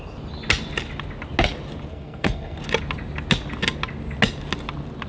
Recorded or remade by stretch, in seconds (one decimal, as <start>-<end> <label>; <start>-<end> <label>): 0.0-1.9 recorded; 1.9-2.6 remade; 2.6-5.1 recorded